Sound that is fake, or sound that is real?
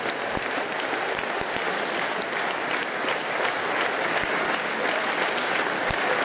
real